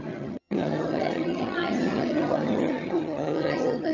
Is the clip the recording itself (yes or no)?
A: no